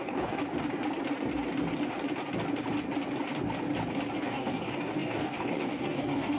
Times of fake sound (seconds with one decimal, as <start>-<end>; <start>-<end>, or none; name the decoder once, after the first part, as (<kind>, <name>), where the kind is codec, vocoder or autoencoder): 0.0-0.4 (codec, DAC); 4.2-6.4